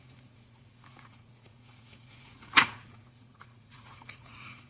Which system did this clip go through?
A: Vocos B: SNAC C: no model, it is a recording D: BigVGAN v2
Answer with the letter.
A